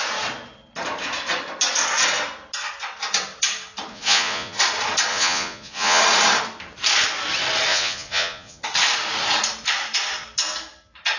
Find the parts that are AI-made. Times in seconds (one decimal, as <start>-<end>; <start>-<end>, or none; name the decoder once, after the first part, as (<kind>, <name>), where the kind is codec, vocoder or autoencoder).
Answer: 3.9-4.6 (vocoder, Vocos); 5.1-6.0; 7.7-8.6